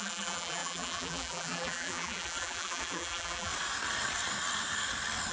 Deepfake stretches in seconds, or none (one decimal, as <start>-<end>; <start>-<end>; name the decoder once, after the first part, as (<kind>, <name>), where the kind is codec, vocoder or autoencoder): 0.0-3.5 (vocoder, BigVGAN v2)